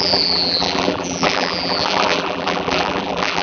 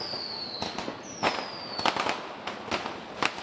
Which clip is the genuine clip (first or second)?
second